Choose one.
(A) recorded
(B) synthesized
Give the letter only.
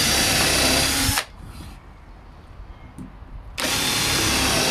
A